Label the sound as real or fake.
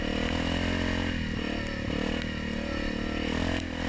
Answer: real